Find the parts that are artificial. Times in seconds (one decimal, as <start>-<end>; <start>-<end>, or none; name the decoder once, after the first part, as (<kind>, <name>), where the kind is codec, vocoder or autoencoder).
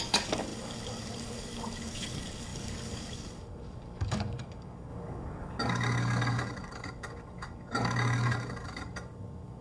0.0-9.6 (codec, DAC)